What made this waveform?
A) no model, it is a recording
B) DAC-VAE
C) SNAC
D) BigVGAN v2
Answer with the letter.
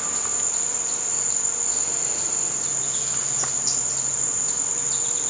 A